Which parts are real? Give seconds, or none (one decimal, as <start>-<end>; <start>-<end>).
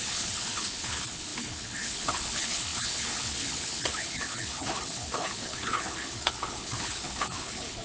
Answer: none